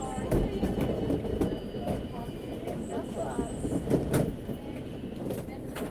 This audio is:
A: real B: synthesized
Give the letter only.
A